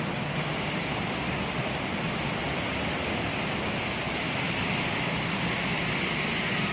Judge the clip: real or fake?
real